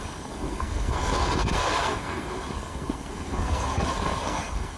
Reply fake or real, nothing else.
fake